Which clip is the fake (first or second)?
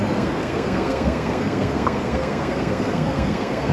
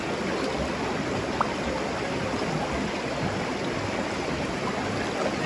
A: first